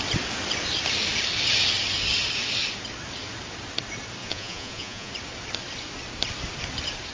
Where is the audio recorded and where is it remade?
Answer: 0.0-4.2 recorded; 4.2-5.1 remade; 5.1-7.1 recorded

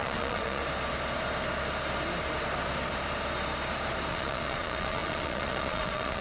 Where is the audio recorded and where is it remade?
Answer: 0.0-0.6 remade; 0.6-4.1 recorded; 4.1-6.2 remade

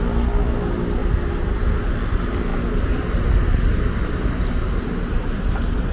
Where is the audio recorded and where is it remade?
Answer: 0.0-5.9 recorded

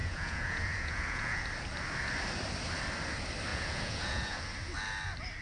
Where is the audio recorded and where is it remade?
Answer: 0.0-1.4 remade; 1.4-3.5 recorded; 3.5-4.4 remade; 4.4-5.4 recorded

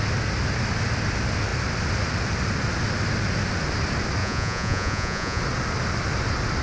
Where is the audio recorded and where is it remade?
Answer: 0.0-4.2 recorded; 4.2-5.4 remade; 5.4-6.6 recorded